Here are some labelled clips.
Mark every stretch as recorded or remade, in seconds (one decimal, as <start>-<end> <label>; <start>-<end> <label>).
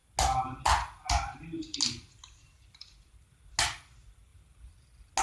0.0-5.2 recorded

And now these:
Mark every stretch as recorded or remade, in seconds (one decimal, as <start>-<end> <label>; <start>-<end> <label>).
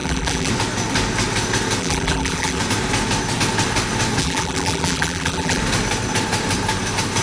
0.0-0.5 remade; 0.5-1.8 recorded; 1.8-2.6 remade; 2.6-4.2 recorded; 4.2-5.6 remade; 5.6-7.2 recorded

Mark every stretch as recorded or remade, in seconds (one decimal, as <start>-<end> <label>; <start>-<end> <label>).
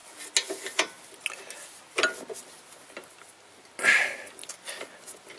0.0-5.4 recorded